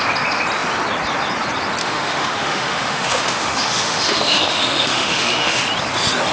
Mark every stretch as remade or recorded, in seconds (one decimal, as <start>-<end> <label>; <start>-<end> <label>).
0.0-1.8 recorded; 1.8-5.6 remade; 5.6-6.3 recorded